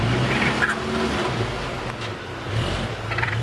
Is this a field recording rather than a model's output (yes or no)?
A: yes